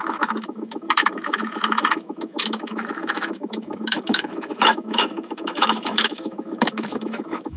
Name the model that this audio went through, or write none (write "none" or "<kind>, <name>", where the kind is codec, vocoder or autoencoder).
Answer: autoencoder, DAC-VAE